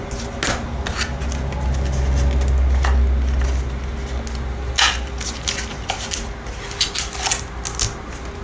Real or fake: real